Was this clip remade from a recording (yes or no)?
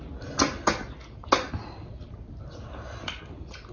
no